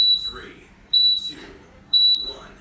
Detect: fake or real fake